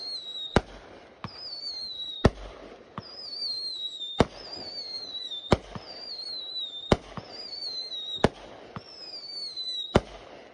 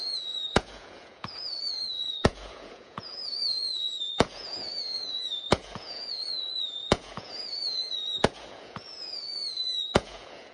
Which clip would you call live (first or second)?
first